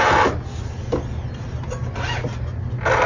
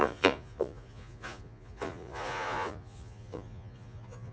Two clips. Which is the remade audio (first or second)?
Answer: second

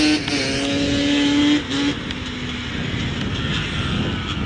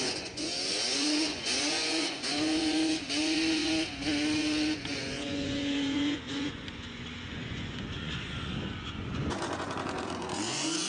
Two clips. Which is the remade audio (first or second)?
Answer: second